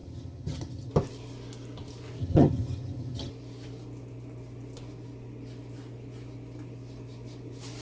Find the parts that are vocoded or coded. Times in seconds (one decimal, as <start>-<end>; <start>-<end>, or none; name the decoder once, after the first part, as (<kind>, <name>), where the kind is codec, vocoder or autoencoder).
0.0-0.9 (vocoder, HiFi-GAN); 2.2-3.3